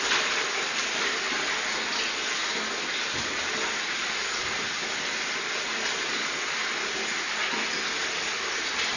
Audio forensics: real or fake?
real